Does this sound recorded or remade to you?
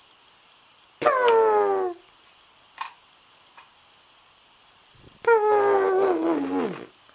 recorded